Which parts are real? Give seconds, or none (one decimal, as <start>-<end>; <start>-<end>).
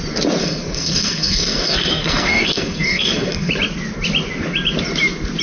0.0-0.4; 3.5-5.4